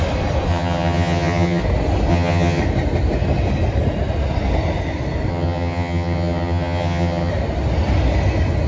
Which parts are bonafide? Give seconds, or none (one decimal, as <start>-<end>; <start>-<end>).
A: 0.0-0.5; 1.6-2.1; 2.6-5.3; 7.3-8.7